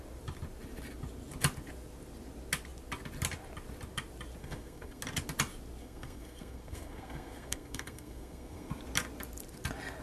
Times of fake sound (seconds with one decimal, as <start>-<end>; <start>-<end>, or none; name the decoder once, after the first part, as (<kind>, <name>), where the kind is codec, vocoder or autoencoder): 4.4-5.0 (codec, SNAC); 5.8-8.8